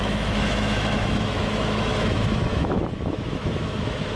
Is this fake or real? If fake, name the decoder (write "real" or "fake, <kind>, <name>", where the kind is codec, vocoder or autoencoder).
fake, autoencoder, DAC-VAE